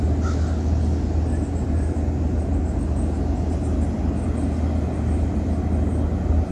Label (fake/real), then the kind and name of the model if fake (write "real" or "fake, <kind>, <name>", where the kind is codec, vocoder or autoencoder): real